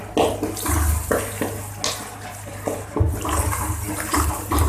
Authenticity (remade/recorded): recorded